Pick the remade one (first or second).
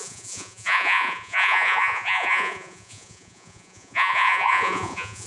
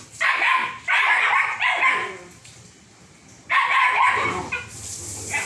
first